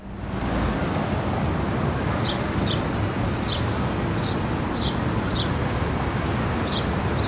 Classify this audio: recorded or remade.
recorded